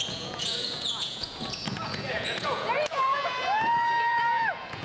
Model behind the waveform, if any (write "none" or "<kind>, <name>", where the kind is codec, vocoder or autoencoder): vocoder, Vocos